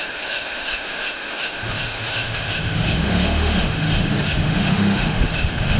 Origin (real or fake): fake